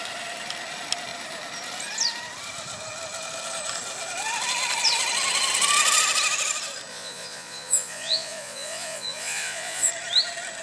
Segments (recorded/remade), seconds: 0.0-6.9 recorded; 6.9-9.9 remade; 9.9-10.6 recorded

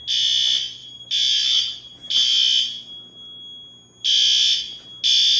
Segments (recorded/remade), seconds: 0.0-5.4 recorded

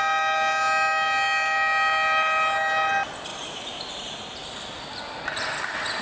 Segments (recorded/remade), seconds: 0.0-3.3 recorded; 3.3-3.9 remade; 3.9-6.0 recorded

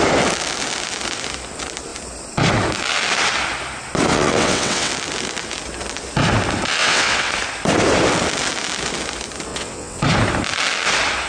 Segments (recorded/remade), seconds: 0.0-4.1 recorded; 4.1-4.9 remade; 4.9-6.8 recorded; 6.8-7.3 remade; 7.3-9.5 recorded; 9.5-10.0 remade; 10.0-11.3 recorded

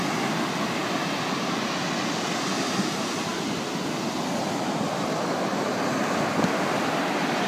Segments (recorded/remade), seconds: 0.0-7.5 recorded

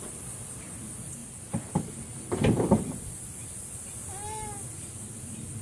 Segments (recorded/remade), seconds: 0.0-5.6 recorded